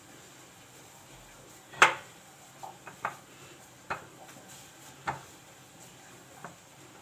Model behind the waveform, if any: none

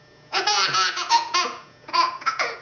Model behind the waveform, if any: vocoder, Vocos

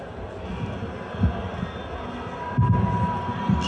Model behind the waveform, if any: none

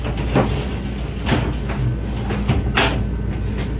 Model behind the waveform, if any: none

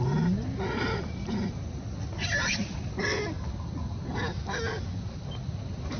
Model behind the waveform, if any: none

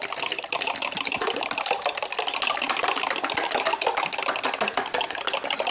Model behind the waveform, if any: none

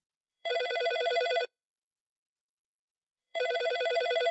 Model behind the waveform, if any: vocoder, Vocos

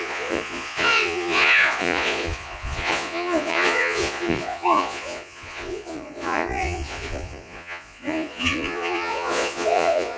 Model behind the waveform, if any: vocoder, Vocos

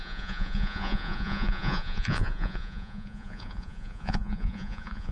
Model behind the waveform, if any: vocoder, Vocos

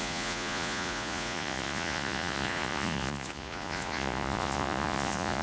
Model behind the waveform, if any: vocoder, Vocos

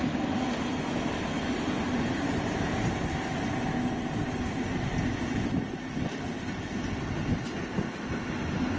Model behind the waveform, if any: none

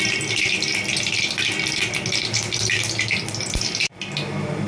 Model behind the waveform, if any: none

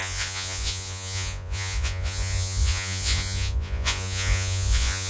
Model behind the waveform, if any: vocoder, Vocos